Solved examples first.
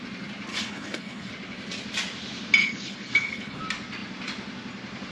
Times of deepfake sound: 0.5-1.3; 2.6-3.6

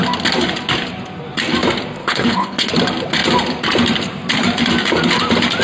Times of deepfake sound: 2.0-2.7

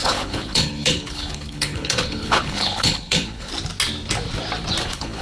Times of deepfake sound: 0.0-3.5; 4.8-5.2

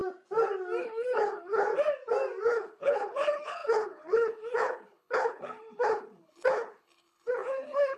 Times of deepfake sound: 0.8-1.7; 2.5-8.0

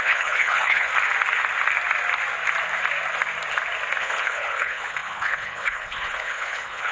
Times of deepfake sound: 0.0-0.9; 4.0-6.9

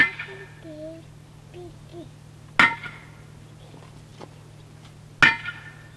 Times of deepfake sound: none